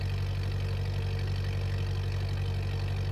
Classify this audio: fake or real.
real